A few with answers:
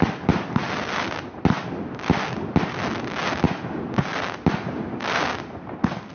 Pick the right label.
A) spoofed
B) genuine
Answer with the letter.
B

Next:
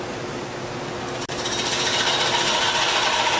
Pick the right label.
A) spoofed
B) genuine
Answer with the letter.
B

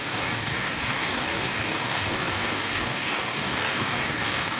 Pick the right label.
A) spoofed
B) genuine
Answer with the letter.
A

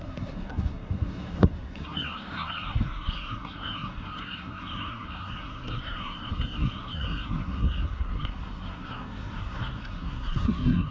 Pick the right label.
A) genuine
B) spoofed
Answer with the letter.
B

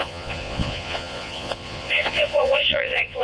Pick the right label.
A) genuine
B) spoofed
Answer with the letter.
B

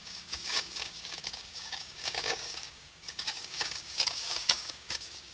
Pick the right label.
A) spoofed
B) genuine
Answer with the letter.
A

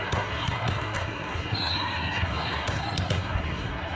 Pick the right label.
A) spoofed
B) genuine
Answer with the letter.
A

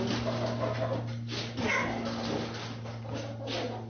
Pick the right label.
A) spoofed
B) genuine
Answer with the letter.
B